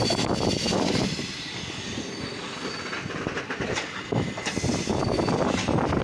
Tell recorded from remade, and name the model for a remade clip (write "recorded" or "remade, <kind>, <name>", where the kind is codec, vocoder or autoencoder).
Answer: recorded